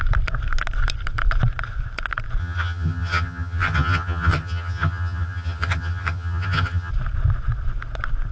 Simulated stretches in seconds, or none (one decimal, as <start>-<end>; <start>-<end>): 2.4-6.9